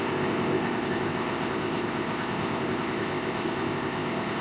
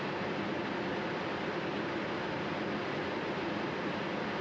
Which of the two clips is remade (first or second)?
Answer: first